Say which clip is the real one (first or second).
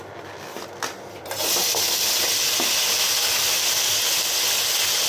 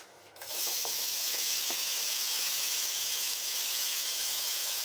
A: first